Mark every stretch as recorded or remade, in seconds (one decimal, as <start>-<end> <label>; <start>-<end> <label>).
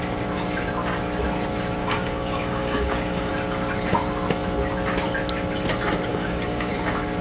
0.0-1.8 recorded; 1.8-3.3 remade; 3.3-6.1 recorded; 6.1-6.7 remade; 6.7-7.2 recorded